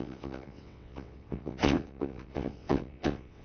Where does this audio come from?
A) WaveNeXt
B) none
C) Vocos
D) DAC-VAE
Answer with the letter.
A